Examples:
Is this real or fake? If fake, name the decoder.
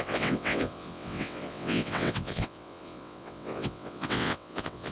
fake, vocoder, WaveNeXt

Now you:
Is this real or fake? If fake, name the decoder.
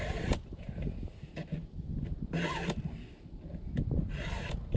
real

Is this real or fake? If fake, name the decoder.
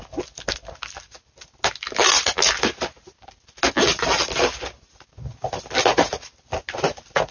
real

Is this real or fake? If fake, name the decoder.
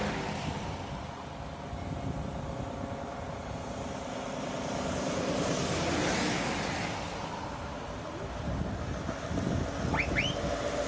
real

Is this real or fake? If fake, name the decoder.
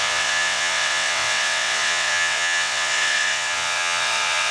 fake, vocoder, WaveNeXt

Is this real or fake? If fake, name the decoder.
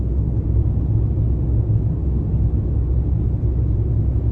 real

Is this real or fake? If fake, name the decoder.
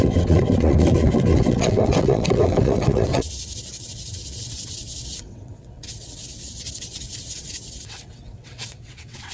fake, vocoder, WaveNeXt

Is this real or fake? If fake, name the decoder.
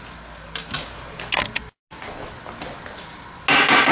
real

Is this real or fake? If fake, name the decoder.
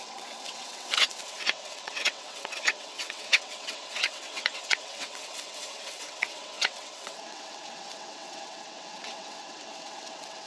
fake, vocoder, WaveNeXt